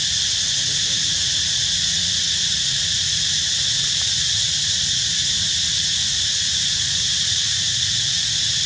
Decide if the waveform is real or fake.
fake